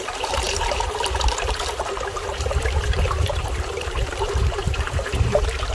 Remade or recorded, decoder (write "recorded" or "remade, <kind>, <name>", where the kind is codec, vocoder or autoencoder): remade, vocoder, BigVGAN v2